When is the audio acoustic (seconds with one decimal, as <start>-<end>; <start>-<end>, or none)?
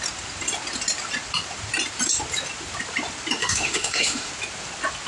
0.0-3.4; 4.3-5.1